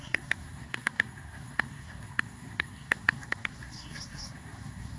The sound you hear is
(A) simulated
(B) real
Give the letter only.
A